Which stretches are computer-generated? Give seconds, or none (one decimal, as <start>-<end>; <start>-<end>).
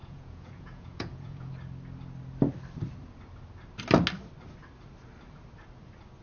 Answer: 0.0-1.5